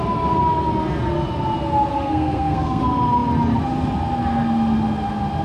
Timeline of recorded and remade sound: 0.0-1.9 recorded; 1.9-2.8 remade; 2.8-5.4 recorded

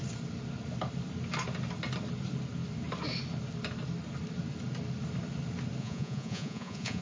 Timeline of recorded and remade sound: 0.0-5.8 recorded; 5.8-7.0 remade

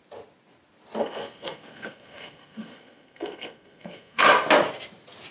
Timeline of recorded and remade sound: 0.0-1.0 recorded; 1.0-4.2 remade; 4.2-5.3 recorded

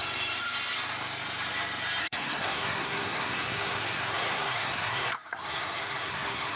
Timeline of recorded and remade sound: 0.0-2.0 recorded; 2.0-6.6 remade

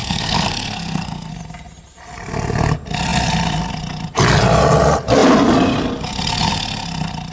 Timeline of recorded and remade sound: 0.0-1.3 remade; 1.3-7.3 recorded

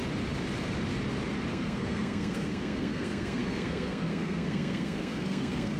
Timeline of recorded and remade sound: 0.0-1.5 recorded; 1.5-5.8 remade

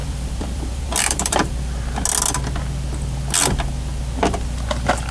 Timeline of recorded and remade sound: 0.0-1.5 remade; 1.5-5.1 recorded